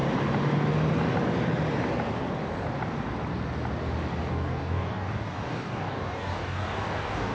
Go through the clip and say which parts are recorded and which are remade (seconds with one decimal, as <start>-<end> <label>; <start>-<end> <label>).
0.0-4.3 recorded; 4.3-7.3 remade